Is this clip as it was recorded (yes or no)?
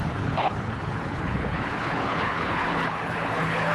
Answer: no